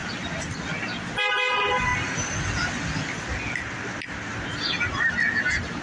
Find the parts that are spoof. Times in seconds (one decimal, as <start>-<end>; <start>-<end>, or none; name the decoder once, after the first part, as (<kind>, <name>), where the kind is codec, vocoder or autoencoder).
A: none